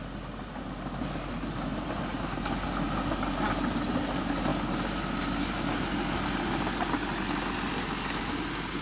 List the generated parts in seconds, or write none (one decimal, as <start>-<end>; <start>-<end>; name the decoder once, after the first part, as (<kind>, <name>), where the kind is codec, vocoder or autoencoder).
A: none